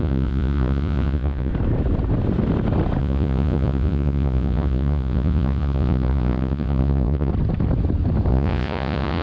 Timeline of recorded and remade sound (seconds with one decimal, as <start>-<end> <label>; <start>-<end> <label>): 0.0-1.5 remade; 1.5-3.0 recorded; 3.0-7.3 remade; 7.3-8.3 recorded; 8.3-9.2 remade